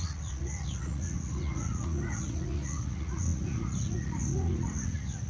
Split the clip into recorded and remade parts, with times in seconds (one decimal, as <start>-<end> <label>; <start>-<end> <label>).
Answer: 0.0-5.3 remade